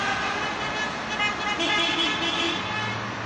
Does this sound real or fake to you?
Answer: real